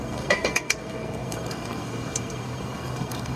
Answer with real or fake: fake